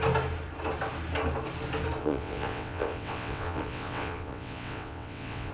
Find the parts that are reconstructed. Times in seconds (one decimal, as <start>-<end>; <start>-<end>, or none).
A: 2.0-5.5